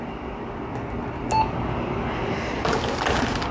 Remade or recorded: recorded